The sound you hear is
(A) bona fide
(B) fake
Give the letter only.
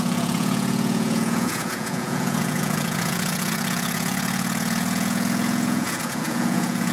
B